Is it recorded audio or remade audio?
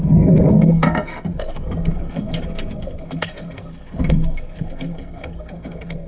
remade